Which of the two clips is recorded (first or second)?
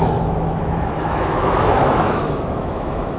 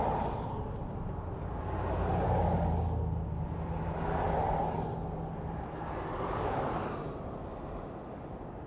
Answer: second